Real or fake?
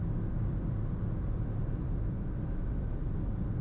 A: real